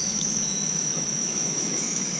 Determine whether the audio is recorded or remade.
remade